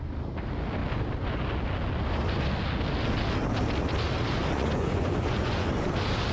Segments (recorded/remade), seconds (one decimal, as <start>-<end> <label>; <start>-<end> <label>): 0.0-4.4 recorded; 4.4-5.7 remade; 5.7-6.3 recorded

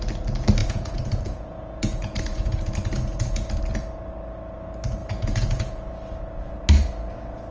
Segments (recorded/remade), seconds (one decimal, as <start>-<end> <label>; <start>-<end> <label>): 0.0-0.6 recorded; 0.6-3.6 remade; 3.6-5.0 recorded; 5.0-5.9 remade; 5.9-7.5 recorded

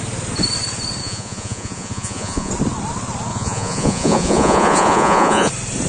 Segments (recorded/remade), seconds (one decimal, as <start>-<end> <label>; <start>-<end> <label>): 0.0-1.0 recorded; 1.0-2.5 remade; 2.5-3.3 recorded; 3.3-5.5 remade; 5.5-5.9 recorded